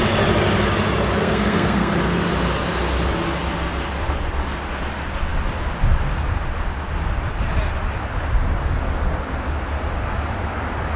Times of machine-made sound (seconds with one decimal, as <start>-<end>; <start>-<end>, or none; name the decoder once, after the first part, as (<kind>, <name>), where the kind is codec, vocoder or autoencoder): 1.2-1.9 (codec, SNAC)